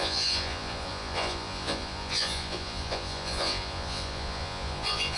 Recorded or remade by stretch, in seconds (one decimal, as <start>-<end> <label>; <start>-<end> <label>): 0.0-5.2 remade